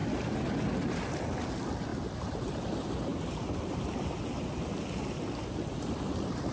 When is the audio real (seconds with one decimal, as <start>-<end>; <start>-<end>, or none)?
0.0-6.5